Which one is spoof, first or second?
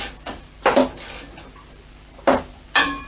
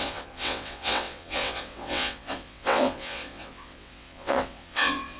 second